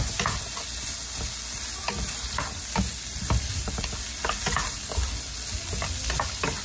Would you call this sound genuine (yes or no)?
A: yes